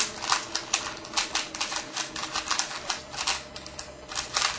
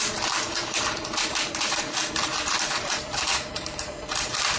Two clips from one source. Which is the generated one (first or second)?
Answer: second